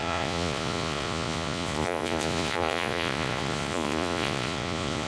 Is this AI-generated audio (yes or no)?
yes